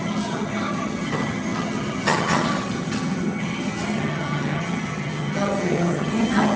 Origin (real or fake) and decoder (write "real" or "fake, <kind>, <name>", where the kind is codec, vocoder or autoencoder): fake, vocoder, HiFi-GAN